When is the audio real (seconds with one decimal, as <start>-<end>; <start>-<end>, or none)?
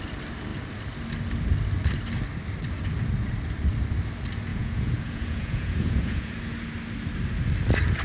0.0-4.5; 6.4-8.0